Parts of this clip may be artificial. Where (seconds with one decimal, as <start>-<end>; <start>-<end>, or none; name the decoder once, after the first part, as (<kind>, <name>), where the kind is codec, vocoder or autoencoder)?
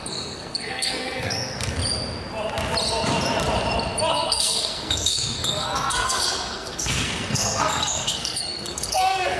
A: 0.0-1.8 (codec, SNAC); 4.1-9.4